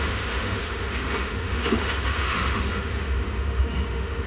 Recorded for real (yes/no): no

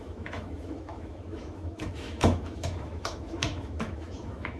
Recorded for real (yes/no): no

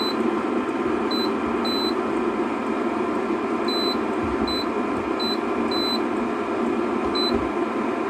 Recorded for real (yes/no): yes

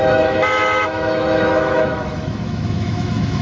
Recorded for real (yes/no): no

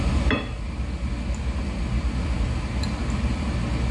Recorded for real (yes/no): yes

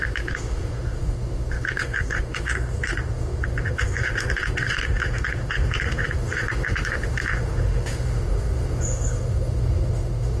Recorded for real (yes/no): no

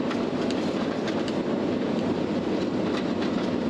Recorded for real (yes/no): yes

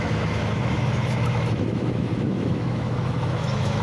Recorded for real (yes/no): no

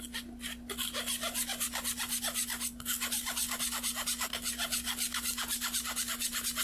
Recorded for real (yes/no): yes